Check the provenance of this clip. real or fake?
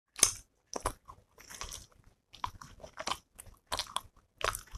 real